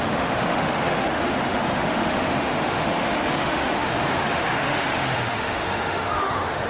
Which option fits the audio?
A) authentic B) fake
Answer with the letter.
B